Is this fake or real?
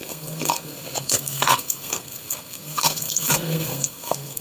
fake